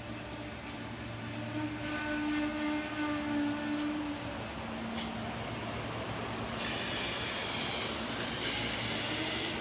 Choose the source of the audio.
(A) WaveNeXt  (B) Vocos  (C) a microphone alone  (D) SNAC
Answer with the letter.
C